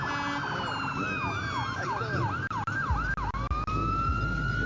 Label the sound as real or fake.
real